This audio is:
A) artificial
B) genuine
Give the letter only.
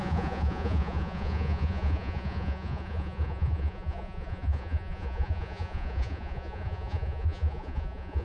A